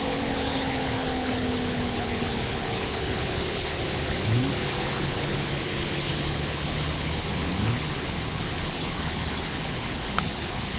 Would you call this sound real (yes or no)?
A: no